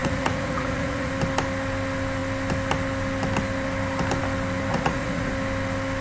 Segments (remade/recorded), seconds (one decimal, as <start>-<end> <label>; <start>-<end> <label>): 0.0-1.1 remade; 1.1-4.7 recorded; 4.7-5.3 remade; 5.3-6.0 recorded